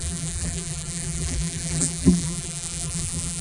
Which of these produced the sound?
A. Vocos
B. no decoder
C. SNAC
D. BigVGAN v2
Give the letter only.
D